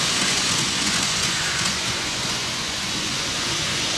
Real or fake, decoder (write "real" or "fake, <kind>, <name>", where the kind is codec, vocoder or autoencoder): fake, vocoder, Vocos